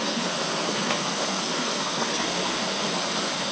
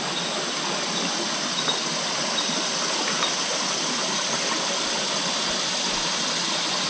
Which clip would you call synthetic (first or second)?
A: first